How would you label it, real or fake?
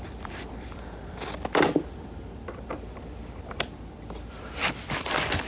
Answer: fake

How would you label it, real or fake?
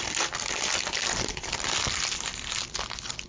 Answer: fake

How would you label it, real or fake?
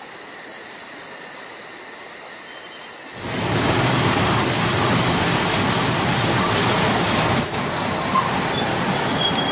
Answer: real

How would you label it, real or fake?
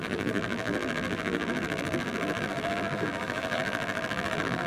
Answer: fake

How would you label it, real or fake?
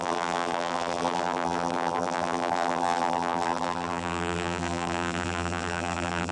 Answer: fake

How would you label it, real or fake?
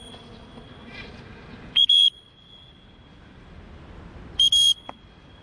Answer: real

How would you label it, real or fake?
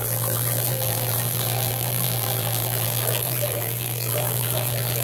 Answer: fake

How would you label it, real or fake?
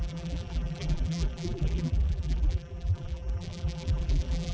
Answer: fake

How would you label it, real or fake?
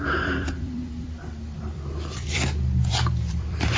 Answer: fake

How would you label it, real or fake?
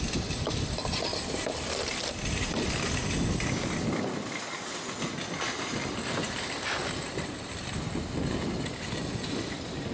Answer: fake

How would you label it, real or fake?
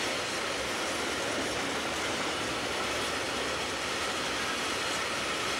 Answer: real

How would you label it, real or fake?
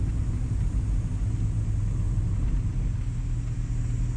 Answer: real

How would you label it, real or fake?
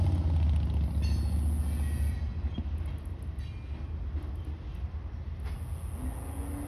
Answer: real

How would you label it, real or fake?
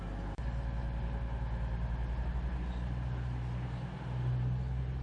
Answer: real